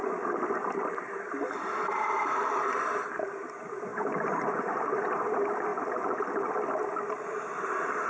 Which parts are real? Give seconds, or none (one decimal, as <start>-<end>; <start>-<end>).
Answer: 3.9-5.2; 5.7-7.6